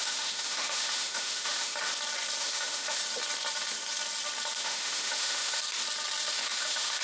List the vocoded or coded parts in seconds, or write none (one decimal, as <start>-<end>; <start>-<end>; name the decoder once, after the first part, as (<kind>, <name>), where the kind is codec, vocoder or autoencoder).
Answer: 0.0-1.9 (autoencoder, DAC-VAE); 2.4-3.0; 4.6-5.6; 6.3-7.0